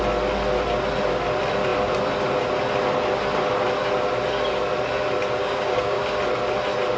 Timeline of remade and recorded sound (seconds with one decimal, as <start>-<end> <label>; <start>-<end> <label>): 0.0-5.4 recorded; 5.4-6.0 remade; 6.0-7.0 recorded